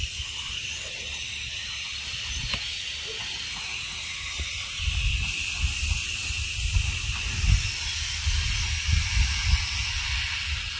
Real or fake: real